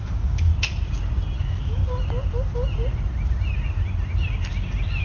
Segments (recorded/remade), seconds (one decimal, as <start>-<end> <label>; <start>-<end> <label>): 0.0-0.5 remade; 0.5-1.4 recorded; 1.4-1.8 remade; 1.8-5.0 recorded